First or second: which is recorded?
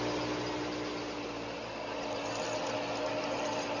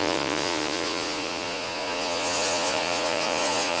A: first